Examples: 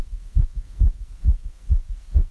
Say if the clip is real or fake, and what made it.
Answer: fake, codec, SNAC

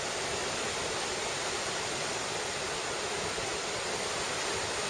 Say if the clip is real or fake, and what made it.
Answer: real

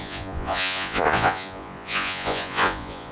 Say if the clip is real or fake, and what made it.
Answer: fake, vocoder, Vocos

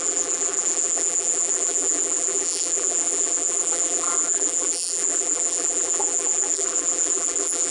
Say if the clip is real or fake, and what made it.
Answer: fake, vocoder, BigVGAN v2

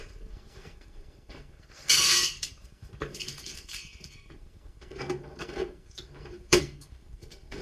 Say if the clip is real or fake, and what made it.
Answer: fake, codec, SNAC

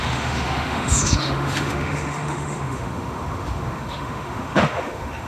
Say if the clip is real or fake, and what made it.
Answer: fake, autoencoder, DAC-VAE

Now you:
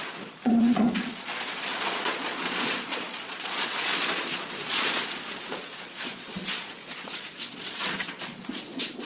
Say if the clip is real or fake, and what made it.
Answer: fake, vocoder, Vocos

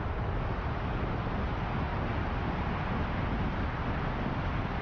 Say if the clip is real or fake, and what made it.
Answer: real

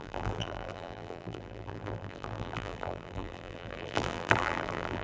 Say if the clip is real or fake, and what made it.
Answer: fake, vocoder, BigVGAN v2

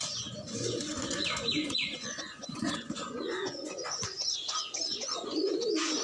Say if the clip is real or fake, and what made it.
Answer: fake, vocoder, Vocos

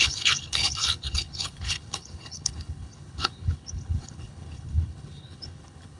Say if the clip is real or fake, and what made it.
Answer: fake, codec, HILCodec